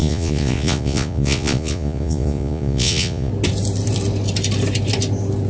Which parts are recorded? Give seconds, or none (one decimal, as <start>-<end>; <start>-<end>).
3.3-5.5